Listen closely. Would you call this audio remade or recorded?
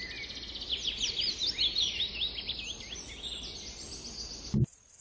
recorded